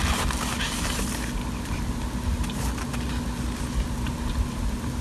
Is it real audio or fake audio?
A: real